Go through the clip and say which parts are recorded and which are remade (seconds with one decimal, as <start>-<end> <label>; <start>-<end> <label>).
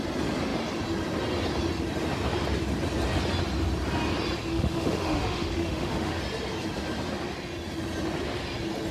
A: 0.0-4.5 recorded; 4.5-6.2 remade; 6.2-8.9 recorded